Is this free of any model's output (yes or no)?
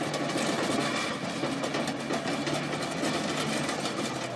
yes